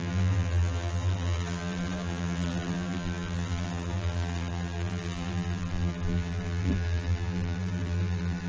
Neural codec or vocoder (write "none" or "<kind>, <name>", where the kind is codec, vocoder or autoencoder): vocoder, BigVGAN v2